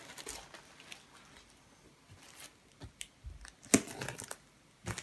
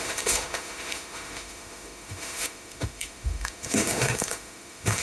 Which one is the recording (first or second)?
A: first